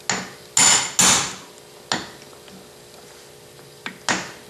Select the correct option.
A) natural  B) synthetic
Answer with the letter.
A